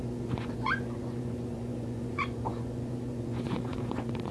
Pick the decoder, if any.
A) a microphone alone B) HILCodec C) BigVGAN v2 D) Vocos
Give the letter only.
D